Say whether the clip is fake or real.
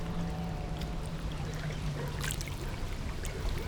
fake